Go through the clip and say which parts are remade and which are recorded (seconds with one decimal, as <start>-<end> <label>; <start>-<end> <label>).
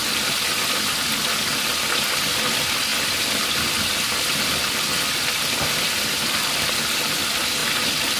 0.0-8.2 recorded